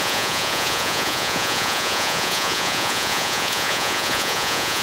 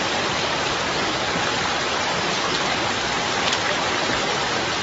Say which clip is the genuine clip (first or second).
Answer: second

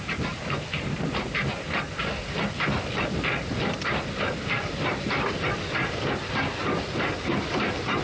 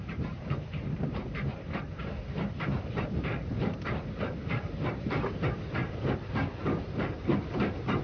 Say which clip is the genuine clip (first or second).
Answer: first